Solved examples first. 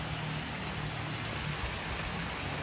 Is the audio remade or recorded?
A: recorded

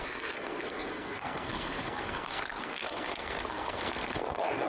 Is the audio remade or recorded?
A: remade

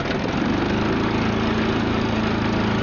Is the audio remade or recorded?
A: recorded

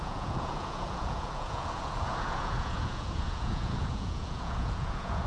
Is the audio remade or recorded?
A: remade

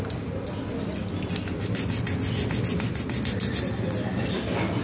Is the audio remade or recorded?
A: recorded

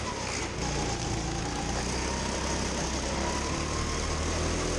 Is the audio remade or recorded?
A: recorded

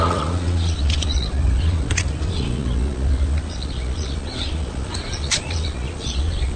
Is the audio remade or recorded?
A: remade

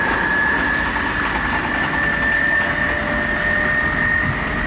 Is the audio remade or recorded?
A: recorded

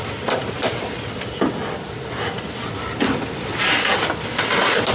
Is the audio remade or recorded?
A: recorded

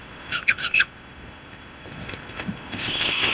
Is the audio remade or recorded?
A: remade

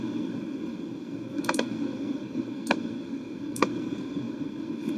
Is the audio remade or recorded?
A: remade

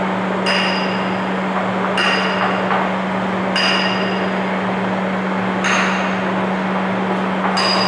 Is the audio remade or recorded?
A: recorded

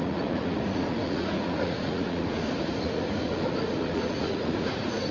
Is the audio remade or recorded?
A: remade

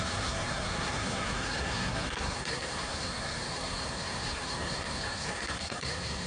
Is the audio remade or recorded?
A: remade